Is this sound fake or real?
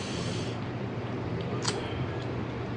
fake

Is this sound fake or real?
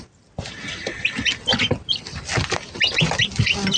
real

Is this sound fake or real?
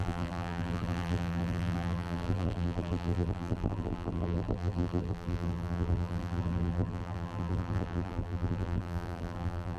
fake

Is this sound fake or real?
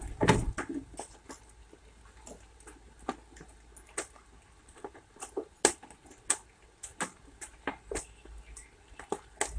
real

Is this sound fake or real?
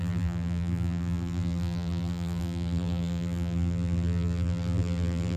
fake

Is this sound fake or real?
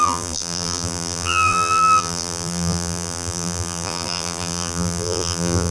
fake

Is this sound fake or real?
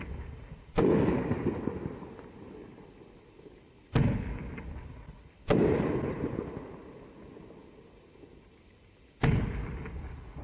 real